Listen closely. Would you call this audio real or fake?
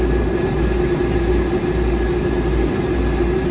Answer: real